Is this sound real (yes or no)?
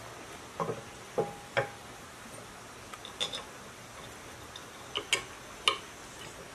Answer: yes